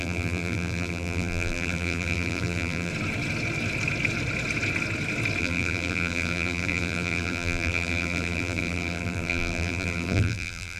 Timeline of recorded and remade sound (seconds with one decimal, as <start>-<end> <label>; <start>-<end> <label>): 0.0-2.9 remade; 2.9-5.4 recorded; 5.4-10.8 remade

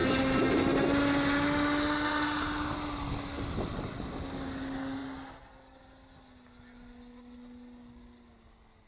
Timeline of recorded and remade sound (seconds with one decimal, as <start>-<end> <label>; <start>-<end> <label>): 0.0-8.9 recorded

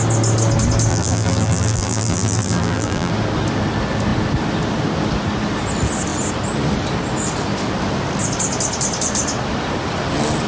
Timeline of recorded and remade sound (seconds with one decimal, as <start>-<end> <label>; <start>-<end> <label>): 0.0-0.9 recorded; 0.9-3.1 remade; 3.1-10.5 recorded

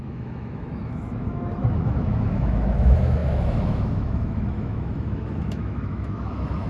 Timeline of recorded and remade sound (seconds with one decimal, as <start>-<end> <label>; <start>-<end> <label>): 0.0-6.7 remade

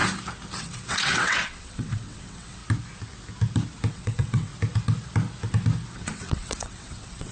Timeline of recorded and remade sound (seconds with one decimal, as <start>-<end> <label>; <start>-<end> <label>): 0.0-0.6 recorded; 0.6-2.6 remade; 2.6-3.9 recorded; 3.9-4.5 remade; 4.5-5.9 recorded; 5.9-7.3 remade

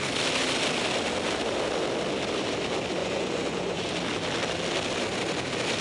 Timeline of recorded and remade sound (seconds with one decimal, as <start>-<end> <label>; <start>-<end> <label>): 0.0-3.0 recorded; 3.0-3.9 remade; 3.9-5.8 recorded

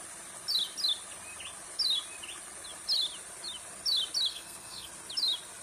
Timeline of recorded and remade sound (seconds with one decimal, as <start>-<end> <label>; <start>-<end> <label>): 0.0-4.3 recorded; 4.3-4.9 remade; 4.9-5.6 recorded